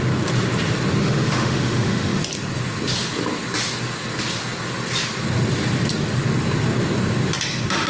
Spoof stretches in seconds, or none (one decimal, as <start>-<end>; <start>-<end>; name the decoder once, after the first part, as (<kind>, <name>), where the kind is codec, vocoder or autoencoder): 1.0-2.2 (autoencoder, DAC-VAE)

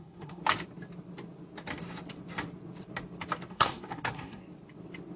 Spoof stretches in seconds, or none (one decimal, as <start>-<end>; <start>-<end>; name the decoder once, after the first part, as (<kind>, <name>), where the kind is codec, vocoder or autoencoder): 0.0-0.4 (codec, SNAC); 3.5-4.4

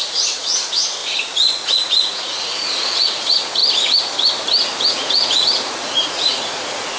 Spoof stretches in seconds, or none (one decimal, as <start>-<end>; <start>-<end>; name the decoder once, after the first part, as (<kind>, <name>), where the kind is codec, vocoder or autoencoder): 0.0-3.6 (vocoder, Vocos); 4.9-7.0

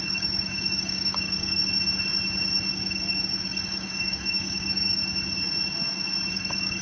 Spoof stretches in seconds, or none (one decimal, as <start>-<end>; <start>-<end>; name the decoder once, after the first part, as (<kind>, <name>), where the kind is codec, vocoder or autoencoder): 0.0-1.6 (codec, DAC); 2.7-5.0; 6.3-6.8

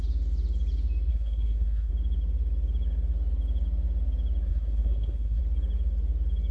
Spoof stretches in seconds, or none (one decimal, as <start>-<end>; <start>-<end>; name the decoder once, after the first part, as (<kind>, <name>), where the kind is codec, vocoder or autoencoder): 1.1-1.9 (codec, SNAC); 4.5-5.4